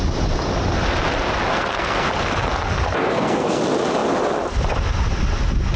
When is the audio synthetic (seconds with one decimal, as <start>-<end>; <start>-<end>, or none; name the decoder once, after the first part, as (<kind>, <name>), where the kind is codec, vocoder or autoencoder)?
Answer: 1.5-2.1 (codec, SNAC); 3.0-3.6